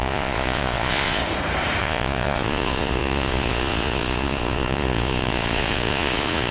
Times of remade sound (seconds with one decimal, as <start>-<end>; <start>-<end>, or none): 0.0-1.2; 1.8-6.5